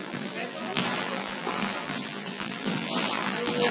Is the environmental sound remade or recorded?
remade